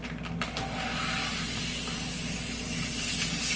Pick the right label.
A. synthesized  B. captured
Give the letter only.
B